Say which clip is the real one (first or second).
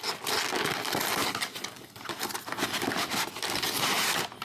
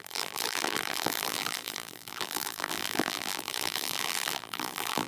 first